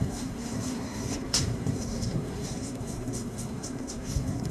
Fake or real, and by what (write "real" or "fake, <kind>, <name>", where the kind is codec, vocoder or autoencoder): fake, codec, SNAC